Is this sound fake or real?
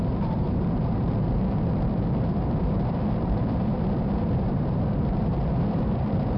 fake